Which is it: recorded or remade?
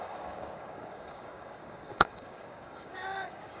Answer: remade